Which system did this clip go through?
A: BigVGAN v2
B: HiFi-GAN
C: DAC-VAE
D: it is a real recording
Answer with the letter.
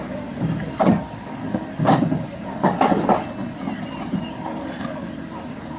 D